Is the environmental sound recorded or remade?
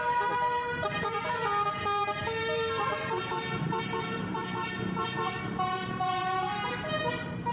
remade